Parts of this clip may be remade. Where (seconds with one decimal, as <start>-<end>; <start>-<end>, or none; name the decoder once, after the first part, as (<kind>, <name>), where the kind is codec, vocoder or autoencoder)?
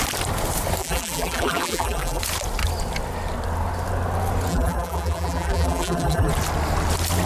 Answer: 0.8-2.2 (vocoder, BigVGAN v2); 4.5-6.3